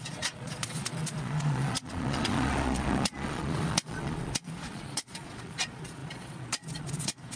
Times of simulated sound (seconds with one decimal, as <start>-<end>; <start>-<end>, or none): 0.0-7.4

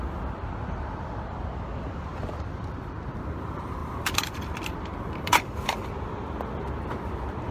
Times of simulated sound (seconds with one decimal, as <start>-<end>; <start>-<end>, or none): 3.8-5.9

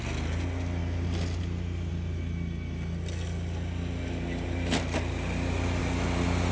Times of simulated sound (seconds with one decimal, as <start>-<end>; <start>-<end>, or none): none

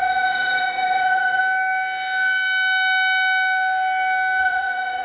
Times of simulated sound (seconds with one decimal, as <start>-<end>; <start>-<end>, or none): 0.0-1.4; 4.4-5.0

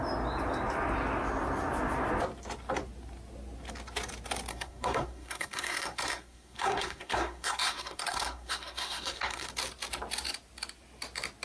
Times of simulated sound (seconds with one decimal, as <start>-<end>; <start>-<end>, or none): 4.5-9.5

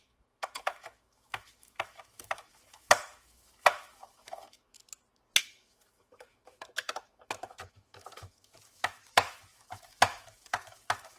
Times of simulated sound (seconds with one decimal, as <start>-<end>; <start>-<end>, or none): 0.0-4.8; 5.4-11.2

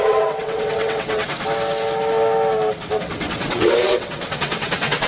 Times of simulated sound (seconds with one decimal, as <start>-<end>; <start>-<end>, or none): 0.0-1.3; 3.0-5.1